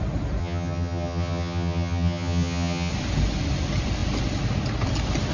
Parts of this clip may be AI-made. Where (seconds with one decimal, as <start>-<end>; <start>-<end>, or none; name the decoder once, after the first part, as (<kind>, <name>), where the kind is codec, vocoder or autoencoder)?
0.4-2.9 (vocoder, HiFi-GAN)